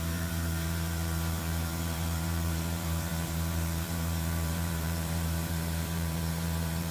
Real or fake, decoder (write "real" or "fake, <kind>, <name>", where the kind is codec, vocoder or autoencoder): fake, vocoder, BigVGAN v2